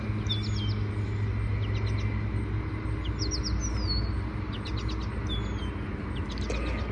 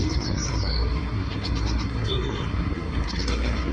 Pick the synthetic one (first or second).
second